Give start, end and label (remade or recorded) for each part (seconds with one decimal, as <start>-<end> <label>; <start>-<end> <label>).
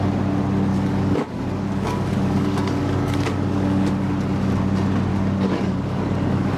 0.0-0.7 recorded; 0.7-4.1 remade; 4.1-5.1 recorded; 5.1-6.6 remade